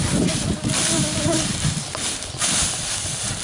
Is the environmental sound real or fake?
fake